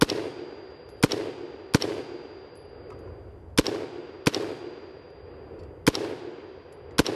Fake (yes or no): no